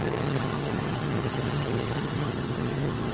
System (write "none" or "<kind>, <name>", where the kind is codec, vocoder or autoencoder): vocoder, HiFi-GAN